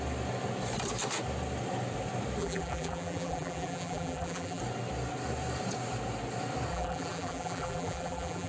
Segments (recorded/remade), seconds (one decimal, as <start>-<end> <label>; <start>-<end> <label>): 0.0-2.4 recorded; 2.4-4.6 remade; 4.6-6.7 recorded; 6.7-8.5 remade